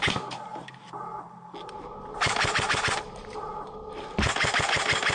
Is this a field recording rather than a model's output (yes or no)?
yes